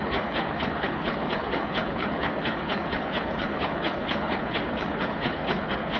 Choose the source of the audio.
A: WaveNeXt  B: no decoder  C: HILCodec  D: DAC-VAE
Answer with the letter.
C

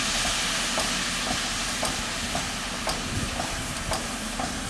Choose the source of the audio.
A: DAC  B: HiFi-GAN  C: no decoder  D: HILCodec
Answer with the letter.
C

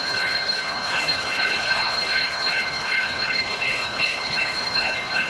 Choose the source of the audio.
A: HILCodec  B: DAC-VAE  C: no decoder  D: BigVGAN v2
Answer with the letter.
A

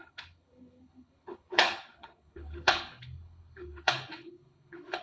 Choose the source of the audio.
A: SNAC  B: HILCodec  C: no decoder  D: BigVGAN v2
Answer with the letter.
B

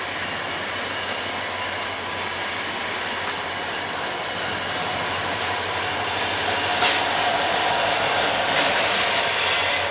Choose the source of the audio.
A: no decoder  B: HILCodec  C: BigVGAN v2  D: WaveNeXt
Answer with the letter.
A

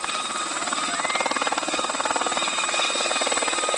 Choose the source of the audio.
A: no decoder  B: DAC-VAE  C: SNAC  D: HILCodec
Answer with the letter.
A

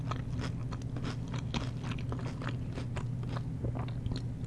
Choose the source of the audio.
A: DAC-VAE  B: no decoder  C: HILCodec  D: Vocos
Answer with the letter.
B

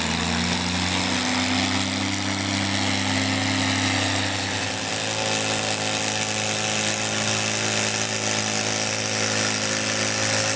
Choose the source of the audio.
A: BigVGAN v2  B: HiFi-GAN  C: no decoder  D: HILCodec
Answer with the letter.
C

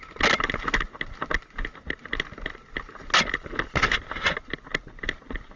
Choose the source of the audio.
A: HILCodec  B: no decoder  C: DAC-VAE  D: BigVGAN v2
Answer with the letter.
B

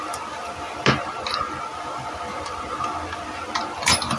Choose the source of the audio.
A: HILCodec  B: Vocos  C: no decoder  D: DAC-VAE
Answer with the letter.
C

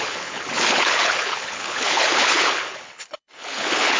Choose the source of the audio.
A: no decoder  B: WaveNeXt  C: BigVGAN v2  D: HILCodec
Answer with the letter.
D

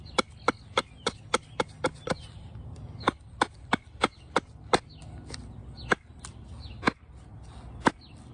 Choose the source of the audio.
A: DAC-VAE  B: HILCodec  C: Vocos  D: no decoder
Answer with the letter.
D